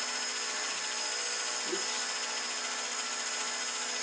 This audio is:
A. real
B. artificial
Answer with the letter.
A